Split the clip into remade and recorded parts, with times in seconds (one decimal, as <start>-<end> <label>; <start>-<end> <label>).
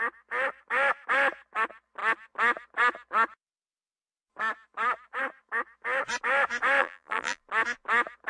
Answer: 0.0-6.8 recorded; 6.8-7.4 remade; 7.4-8.3 recorded